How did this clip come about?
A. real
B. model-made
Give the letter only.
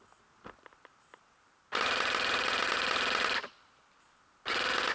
A